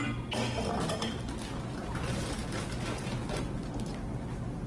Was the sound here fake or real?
real